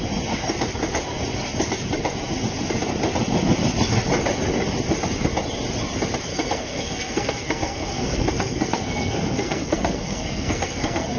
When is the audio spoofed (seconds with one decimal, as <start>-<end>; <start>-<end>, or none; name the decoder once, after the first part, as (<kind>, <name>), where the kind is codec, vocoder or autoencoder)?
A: 6.3-11.2 (codec, SNAC)

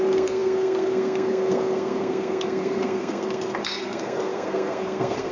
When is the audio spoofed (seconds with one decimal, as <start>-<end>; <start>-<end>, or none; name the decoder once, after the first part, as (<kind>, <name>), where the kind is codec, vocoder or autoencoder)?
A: 0.0-5.3 (codec, SNAC)

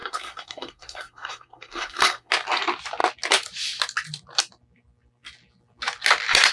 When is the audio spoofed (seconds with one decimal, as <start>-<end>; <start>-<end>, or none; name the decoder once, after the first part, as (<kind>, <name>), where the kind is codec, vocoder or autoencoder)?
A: 0.0-2.3 (codec, SNAC)

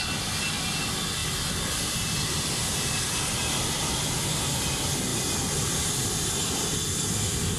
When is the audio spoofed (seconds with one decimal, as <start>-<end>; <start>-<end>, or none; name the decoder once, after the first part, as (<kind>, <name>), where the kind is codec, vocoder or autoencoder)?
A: none

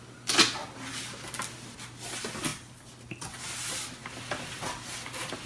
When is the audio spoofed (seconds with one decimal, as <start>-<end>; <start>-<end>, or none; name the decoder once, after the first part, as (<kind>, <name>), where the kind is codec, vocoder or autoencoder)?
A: none

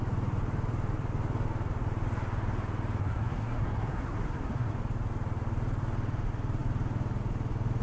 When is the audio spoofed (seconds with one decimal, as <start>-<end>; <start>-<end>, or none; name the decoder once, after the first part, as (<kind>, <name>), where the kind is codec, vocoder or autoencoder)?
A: 3.0-4.7 (codec, SNAC)

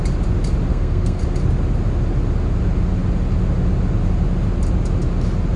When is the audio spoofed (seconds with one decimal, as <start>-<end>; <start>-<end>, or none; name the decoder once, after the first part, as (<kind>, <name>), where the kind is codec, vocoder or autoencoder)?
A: 0.7-1.2 (codec, SNAC)

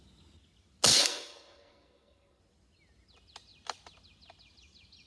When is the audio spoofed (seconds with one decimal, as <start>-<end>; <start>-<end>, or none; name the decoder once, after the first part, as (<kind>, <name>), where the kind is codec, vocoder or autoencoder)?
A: 0.9-2.4 (codec, SNAC)